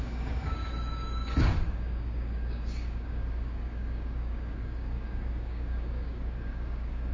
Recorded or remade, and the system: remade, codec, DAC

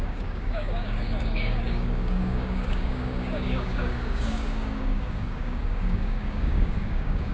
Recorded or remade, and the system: remade, codec, DAC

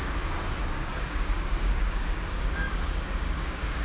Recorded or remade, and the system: remade, codec, DAC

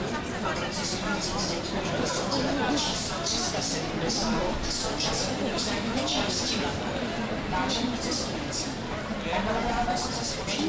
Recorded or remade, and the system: recorded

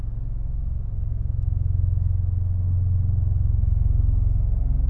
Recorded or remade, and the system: recorded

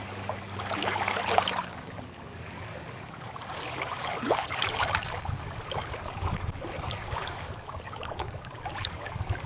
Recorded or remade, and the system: remade, codec, DAC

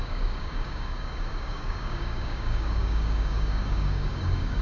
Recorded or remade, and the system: remade, codec, DAC